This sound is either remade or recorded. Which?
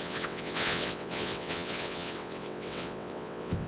remade